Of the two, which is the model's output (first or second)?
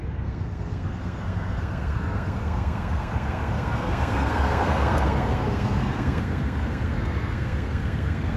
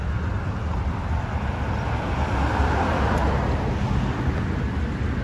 first